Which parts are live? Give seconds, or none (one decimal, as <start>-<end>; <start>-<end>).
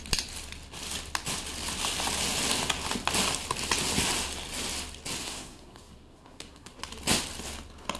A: 0.0-5.2; 6.8-8.0